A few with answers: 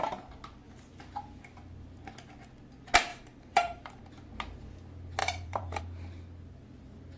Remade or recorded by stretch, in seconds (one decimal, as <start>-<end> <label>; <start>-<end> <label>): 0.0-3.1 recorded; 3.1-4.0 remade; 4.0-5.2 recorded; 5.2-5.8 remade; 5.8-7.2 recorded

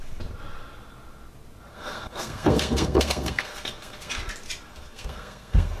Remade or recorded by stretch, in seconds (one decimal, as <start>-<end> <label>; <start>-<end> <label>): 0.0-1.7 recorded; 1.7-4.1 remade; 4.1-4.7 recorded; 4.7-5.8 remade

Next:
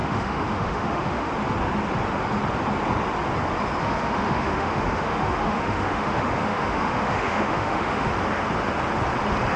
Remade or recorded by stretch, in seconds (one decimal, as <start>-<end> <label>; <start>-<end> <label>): 0.0-1.3 remade; 1.3-3.8 recorded; 3.8-8.1 remade; 8.1-9.6 recorded

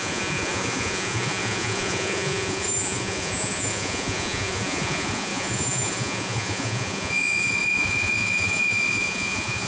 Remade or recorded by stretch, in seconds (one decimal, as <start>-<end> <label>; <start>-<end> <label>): 0.0-9.7 remade

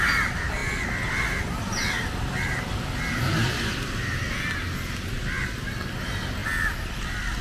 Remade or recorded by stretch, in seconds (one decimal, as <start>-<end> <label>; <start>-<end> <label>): 0.0-7.4 recorded

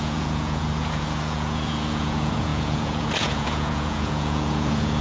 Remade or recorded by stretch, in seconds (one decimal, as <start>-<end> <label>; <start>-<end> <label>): 0.0-5.0 remade